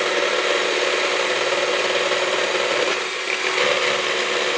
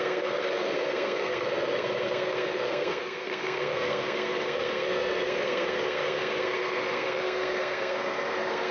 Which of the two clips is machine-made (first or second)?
second